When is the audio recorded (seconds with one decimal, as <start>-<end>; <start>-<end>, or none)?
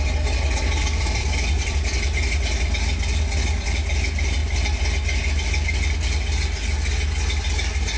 0.0-8.0